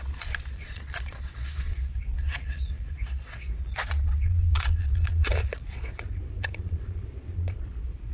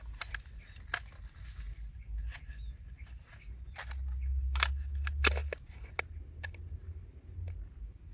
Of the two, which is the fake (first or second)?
first